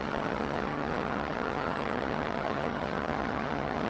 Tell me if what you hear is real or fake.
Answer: fake